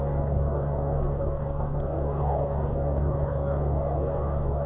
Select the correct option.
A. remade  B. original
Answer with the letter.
A